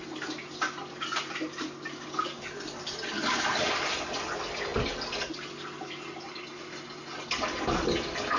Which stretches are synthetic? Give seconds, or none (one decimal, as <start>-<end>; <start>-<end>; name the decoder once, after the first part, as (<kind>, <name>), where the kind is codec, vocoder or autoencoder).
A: none